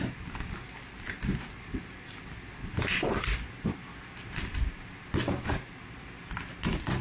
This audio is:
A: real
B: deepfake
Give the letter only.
A